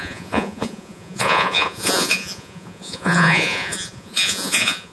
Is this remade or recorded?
remade